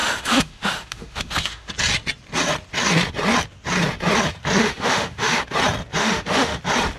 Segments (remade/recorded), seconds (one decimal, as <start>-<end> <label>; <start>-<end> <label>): 0.0-1.7 remade; 1.7-4.6 recorded; 4.6-5.4 remade; 5.4-6.0 recorded; 6.0-6.6 remade; 6.6-7.0 recorded